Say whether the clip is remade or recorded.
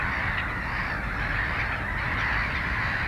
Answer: recorded